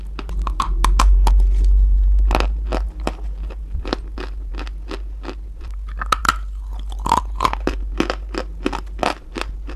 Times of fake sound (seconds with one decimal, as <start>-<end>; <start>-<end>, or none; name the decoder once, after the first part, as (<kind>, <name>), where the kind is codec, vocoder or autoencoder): none